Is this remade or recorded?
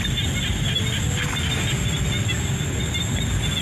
recorded